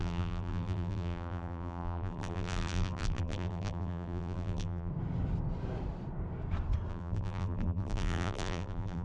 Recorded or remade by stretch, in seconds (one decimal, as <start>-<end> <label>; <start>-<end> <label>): 0.0-4.9 remade; 4.9-6.9 recorded; 6.9-9.0 remade